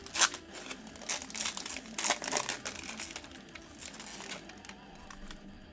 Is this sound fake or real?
real